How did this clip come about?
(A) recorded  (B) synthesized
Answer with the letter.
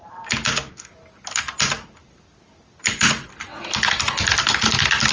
A